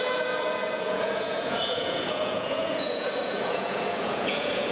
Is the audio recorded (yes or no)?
no